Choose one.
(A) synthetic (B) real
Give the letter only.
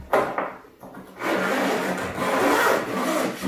B